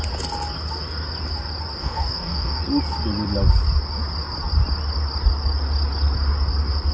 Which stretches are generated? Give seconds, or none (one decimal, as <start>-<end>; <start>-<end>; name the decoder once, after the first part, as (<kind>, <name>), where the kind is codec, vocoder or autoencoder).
1.8-2.6 (codec, DAC)